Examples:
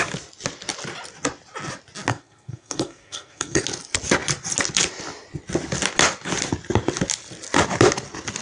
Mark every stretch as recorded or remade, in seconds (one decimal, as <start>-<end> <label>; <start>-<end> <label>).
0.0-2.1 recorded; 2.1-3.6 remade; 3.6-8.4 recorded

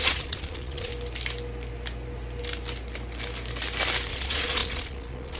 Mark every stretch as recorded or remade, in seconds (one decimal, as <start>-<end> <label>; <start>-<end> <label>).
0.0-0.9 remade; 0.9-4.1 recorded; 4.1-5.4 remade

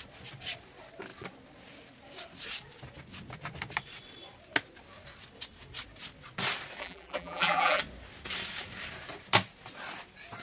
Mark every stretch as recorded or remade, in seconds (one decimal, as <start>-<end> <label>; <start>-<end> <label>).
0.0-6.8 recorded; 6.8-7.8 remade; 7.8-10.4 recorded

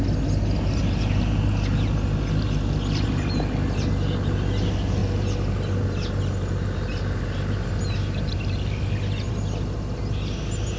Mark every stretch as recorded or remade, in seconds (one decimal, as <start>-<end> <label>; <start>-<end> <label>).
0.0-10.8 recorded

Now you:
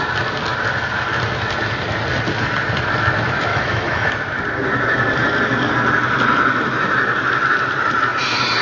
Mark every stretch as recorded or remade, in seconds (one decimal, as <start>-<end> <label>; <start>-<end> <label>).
0.0-3.5 recorded; 3.5-4.1 remade; 4.1-8.6 recorded

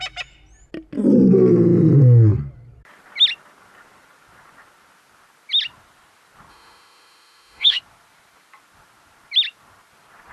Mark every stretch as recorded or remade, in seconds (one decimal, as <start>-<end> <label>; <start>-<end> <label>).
0.0-6.5 recorded; 6.5-7.8 remade; 7.8-10.3 recorded